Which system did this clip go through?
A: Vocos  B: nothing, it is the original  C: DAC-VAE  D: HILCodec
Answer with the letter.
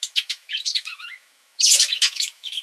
C